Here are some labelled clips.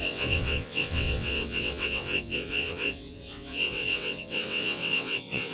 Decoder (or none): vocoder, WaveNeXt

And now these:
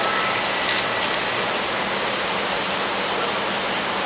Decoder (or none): none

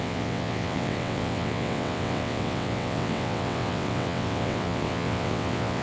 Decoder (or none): vocoder, WaveNeXt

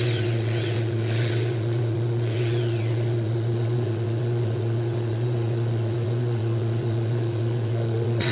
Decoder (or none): vocoder, WaveNeXt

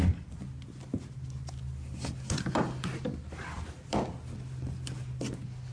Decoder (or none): none